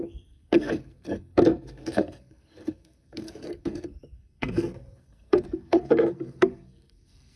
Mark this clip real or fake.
fake